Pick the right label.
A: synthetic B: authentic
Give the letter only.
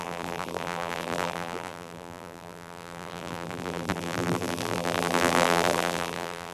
A